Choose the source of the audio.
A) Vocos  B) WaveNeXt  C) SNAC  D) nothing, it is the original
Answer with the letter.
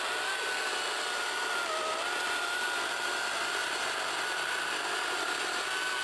D